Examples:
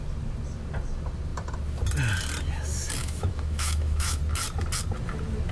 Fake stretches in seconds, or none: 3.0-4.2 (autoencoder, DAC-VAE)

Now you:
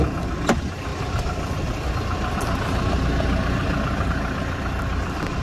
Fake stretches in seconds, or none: none